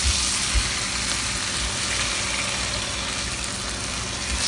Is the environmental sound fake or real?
real